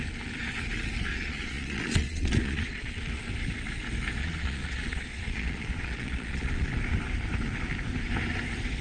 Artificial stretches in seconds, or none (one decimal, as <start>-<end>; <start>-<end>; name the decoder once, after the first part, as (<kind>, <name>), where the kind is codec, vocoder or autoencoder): 1.1-2.9 (vocoder, Vocos); 4.2-6.7